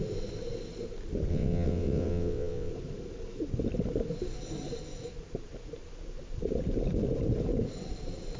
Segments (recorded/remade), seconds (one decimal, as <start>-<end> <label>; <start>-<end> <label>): 0.0-1.3 recorded; 1.3-2.7 remade; 2.7-8.4 recorded